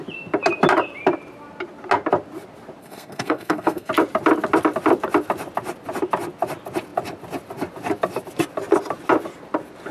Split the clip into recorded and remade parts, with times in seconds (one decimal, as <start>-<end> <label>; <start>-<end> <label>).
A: 0.0-2.8 recorded; 2.8-3.9 remade; 3.9-9.9 recorded